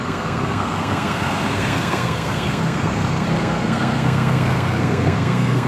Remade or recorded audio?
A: remade